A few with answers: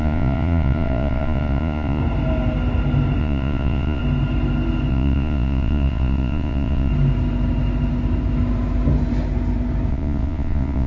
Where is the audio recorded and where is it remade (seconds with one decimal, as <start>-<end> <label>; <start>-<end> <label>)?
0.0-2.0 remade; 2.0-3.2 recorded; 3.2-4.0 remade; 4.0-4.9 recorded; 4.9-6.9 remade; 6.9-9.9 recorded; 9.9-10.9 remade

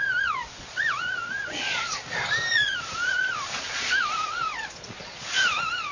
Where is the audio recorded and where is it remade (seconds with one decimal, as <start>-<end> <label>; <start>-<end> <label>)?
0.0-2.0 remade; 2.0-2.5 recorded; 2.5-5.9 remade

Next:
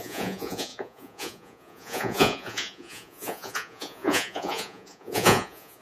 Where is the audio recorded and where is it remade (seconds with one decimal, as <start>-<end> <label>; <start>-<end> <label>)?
0.0-5.8 remade

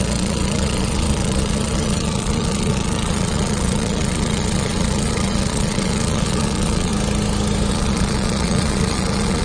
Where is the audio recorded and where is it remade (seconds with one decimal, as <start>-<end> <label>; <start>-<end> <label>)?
0.0-6.9 remade; 6.9-7.7 recorded; 7.7-9.4 remade

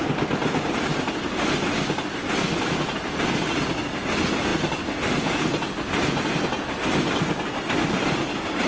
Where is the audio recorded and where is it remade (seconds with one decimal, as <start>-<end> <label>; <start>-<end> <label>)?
0.0-8.7 recorded

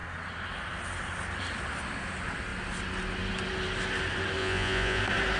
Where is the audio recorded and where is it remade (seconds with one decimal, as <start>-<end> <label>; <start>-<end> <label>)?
0.0-4.4 recorded; 4.4-5.0 remade; 5.0-5.4 recorded